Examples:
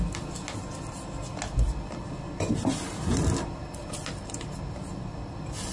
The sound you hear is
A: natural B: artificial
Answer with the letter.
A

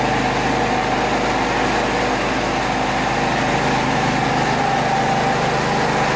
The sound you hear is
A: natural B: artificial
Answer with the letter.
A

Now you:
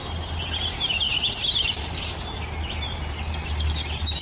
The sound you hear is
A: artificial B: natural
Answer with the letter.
B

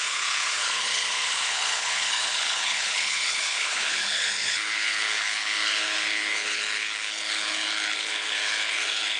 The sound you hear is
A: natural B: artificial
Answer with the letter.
B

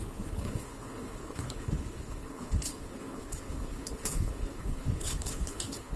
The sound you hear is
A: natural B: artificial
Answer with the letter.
B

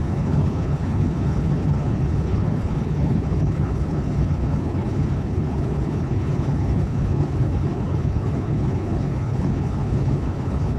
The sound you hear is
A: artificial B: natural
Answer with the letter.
A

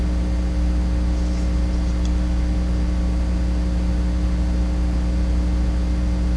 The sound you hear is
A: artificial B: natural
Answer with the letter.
B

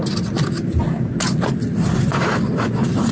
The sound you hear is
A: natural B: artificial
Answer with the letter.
A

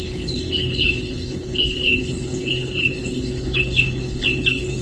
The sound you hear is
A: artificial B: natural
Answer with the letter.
A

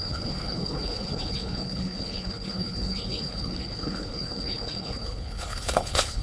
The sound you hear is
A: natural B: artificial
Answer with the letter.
B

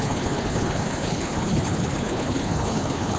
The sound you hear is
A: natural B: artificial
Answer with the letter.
B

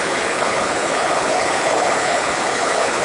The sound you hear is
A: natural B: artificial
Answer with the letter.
B